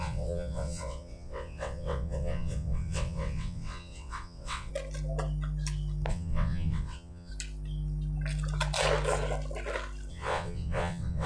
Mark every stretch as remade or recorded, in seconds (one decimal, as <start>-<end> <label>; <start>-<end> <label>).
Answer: 0.0-4.7 remade; 4.7-6.1 recorded; 6.1-7.3 remade; 7.3-10.1 recorded; 10.1-11.3 remade